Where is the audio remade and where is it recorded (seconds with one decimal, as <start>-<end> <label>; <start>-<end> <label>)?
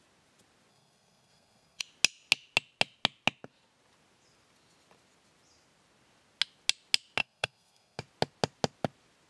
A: 0.0-0.7 recorded; 0.7-1.8 remade; 1.8-7.2 recorded; 7.2-8.0 remade; 8.0-9.3 recorded